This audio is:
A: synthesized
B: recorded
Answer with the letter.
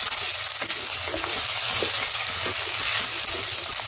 B